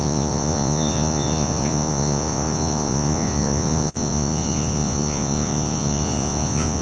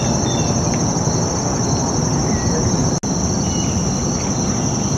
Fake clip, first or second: first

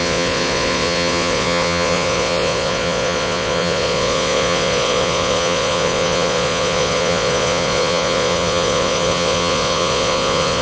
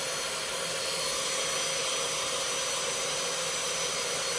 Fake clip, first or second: first